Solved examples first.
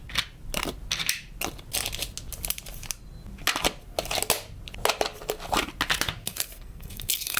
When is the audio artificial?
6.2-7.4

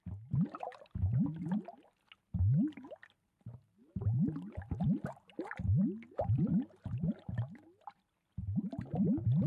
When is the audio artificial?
none